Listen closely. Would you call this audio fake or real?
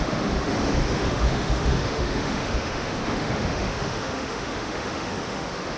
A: fake